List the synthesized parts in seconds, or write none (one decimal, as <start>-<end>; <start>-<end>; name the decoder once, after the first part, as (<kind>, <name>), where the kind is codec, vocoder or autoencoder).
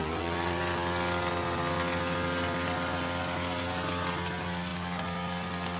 0.0-0.6 (vocoder, Vocos)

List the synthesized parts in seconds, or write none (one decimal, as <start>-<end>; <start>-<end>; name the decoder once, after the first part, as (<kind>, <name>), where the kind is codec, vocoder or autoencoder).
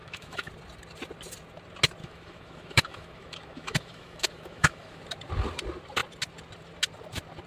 0.0-0.5 (autoencoder, DAC-VAE); 2.0-5.0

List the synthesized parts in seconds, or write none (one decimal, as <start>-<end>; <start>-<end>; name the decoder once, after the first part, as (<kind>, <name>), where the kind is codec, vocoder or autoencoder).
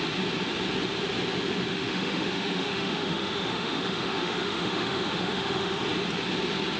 1.7-5.8 (autoencoder, DAC-VAE)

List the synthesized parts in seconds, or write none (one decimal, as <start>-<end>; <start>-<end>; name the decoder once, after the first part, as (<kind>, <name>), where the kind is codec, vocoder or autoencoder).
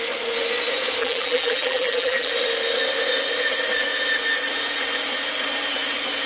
1.0-2.3 (vocoder, BigVGAN v2)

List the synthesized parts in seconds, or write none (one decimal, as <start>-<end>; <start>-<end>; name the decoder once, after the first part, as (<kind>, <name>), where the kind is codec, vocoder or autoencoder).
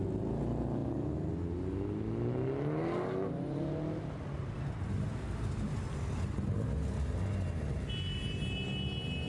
none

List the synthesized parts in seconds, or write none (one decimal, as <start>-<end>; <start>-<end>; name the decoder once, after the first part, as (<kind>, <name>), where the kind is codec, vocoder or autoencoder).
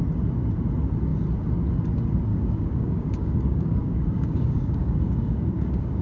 2.3-6.0 (codec, DAC)